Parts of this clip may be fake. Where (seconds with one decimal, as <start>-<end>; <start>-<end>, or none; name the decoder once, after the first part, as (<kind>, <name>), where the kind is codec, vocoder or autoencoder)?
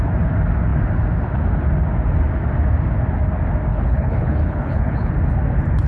3.7-5.1 (codec, HILCodec)